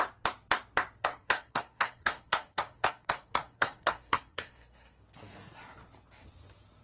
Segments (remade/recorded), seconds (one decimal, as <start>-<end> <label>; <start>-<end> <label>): 0.0-1.0 recorded; 1.0-5.0 remade; 5.0-6.8 recorded